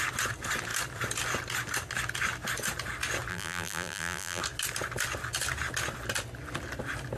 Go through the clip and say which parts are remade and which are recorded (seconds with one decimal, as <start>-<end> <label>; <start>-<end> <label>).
0.0-3.3 recorded; 3.3-4.4 remade; 4.4-7.2 recorded